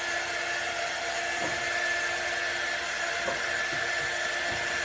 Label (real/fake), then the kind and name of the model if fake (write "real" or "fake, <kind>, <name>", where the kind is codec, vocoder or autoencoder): real